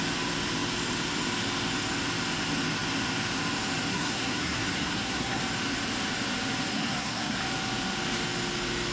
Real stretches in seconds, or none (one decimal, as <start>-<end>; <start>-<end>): 0.0-3.9; 5.4-6.7; 7.4-8.9